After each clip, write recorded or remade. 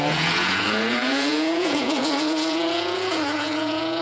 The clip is remade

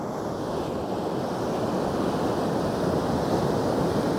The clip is recorded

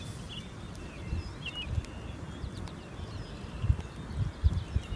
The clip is recorded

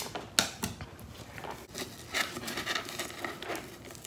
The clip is recorded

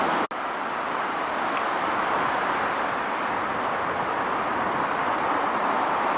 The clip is recorded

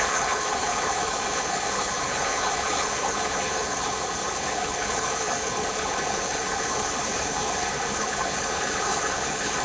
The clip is remade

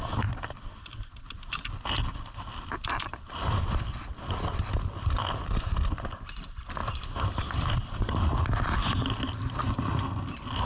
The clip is recorded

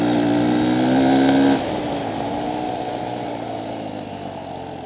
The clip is recorded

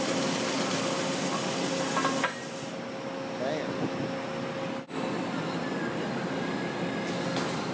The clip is recorded